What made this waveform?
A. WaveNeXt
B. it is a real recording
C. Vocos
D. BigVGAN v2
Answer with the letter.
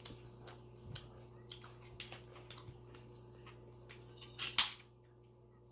B